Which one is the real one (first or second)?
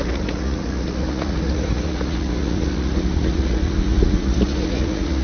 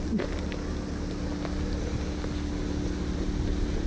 second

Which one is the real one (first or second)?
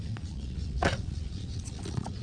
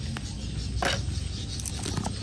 second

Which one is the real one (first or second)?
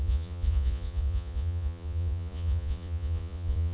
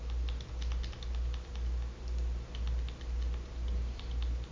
second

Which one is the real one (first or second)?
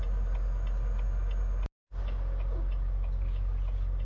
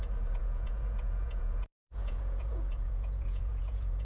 first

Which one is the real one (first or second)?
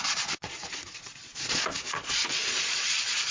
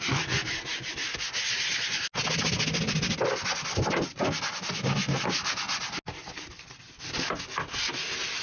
second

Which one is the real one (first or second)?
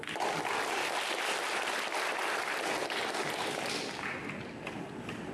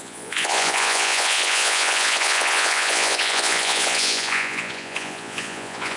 first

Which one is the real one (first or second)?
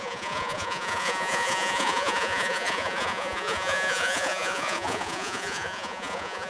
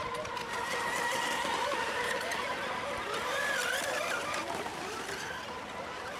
second